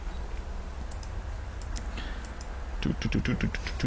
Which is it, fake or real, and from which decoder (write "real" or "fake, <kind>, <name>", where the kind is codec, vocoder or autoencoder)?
real